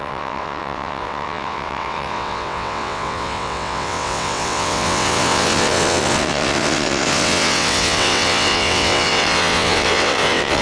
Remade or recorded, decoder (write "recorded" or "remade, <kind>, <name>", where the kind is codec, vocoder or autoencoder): remade, vocoder, WaveNeXt